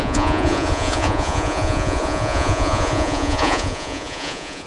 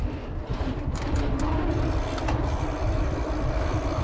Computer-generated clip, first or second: first